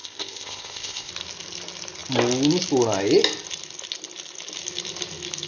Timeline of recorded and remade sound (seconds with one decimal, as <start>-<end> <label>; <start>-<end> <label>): 0.0-1.1 remade; 1.1-5.5 recorded